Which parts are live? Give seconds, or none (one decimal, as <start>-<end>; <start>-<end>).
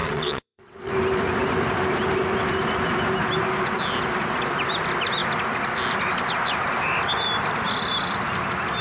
0.9-8.8